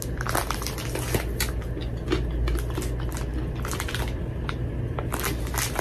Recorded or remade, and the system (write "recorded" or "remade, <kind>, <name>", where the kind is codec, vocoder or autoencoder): recorded